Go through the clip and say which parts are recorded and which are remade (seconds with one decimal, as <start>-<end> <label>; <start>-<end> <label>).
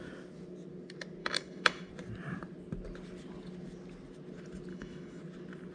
0.0-1.2 recorded; 1.2-1.9 remade; 1.9-4.7 recorded; 4.7-5.2 remade; 5.2-5.7 recorded